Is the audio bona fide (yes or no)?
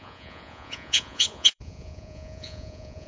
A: no